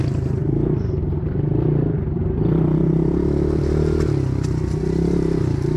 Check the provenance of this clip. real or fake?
real